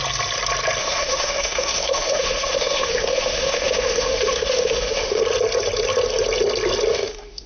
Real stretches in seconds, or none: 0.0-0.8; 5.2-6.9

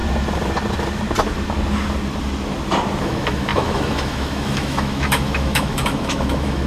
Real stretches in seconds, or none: 0.0-3.0

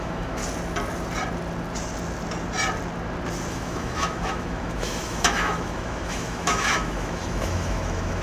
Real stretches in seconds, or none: 0.4-3.5

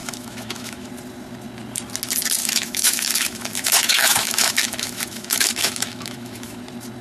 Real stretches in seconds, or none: 0.9-2.4; 6.6-7.0

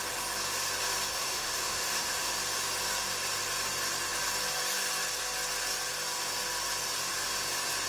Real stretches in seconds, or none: 0.0-1.1; 2.3-7.9

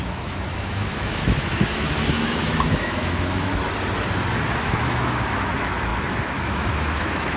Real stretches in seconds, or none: 3.5-4.5

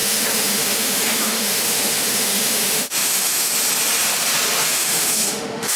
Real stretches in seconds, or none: 3.5-4.7

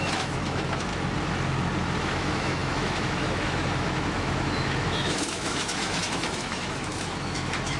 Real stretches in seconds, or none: 0.9-2.0